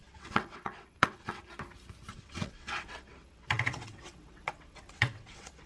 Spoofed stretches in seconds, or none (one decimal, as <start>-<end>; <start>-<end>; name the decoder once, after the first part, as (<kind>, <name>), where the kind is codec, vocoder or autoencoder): 0.0-1.4 (vocoder, WaveNeXt); 2.1-5.7